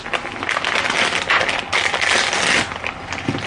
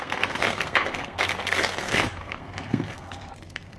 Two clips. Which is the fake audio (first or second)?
second